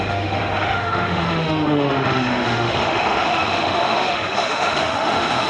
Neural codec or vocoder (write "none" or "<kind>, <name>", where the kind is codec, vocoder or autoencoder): autoencoder, DAC-VAE